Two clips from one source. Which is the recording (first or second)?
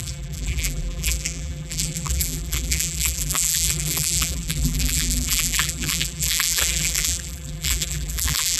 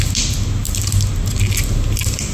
second